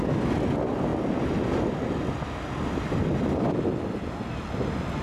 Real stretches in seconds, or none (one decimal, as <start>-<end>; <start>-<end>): 0.0-5.0